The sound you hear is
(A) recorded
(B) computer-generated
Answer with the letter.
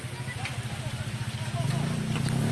A